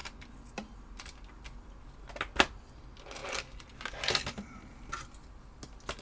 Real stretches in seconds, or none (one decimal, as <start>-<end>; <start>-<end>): 0.0-6.0